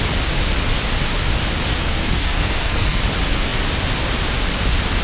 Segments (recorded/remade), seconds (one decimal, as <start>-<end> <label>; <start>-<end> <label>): 0.0-1.7 recorded; 1.7-3.0 remade; 3.0-5.0 recorded